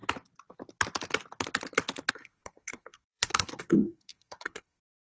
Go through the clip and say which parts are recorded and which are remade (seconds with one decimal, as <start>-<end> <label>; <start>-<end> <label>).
0.0-2.1 recorded; 2.1-5.1 remade